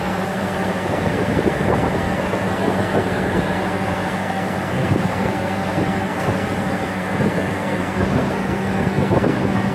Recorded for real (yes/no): no